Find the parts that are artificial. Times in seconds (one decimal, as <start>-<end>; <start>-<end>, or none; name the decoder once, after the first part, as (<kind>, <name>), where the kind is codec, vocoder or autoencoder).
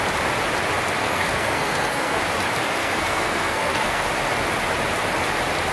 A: 1.0-2.2 (codec, SNAC); 2.8-4.1